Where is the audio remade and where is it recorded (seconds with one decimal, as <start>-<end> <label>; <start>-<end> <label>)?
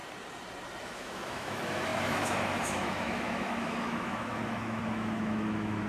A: 0.0-0.8 recorded; 0.8-5.9 remade